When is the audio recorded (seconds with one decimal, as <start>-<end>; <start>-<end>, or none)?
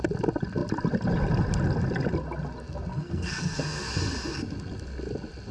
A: 0.0-2.9; 3.9-5.5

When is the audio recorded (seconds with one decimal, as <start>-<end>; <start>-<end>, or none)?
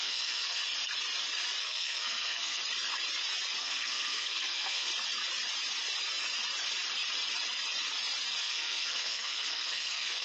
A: 0.6-1.6; 2.6-3.6; 4.9-8.4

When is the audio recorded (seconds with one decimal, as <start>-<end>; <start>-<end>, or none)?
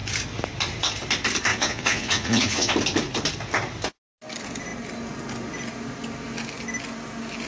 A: 0.0-1.5; 2.7-7.5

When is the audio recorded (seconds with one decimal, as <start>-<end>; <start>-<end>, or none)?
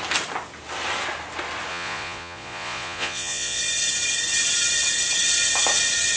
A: 0.0-1.7; 3.6-6.2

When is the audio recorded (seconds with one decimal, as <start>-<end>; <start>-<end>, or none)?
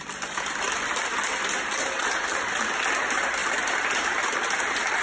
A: 0.0-5.0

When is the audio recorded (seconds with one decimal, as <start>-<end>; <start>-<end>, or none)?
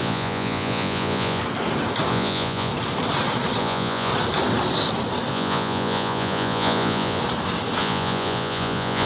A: 1.4-2.1; 2.7-3.6; 4.1-5.3; 7.2-7.8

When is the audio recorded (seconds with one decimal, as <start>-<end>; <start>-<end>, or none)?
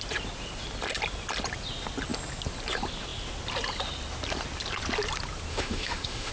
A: 0.0-5.5